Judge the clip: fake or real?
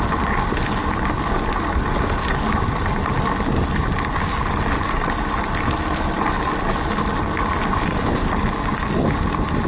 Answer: real